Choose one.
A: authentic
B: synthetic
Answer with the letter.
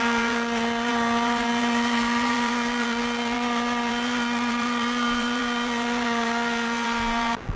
B